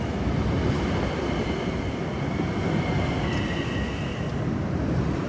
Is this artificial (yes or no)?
no